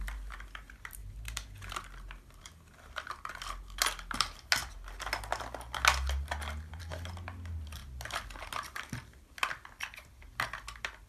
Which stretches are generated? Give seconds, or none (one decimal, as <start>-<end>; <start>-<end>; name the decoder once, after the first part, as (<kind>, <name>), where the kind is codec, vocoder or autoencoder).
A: none